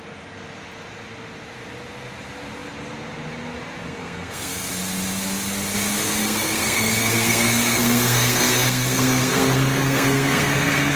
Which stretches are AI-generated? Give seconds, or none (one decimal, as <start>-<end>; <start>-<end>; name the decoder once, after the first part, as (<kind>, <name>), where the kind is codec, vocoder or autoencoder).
3.8-4.7 (codec, SNAC); 6.2-11.0